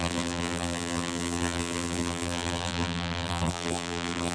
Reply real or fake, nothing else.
fake